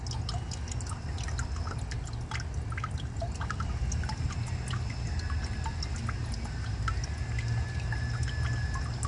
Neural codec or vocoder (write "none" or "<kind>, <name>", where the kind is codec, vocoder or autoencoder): none